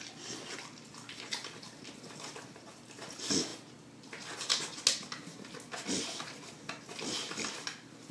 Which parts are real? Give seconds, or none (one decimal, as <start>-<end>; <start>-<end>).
0.0-8.1